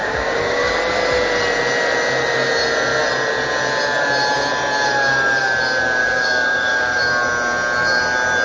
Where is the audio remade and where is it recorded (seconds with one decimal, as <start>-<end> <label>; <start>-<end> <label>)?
0.0-0.8 remade; 0.8-6.0 recorded; 6.0-7.0 remade; 7.0-8.4 recorded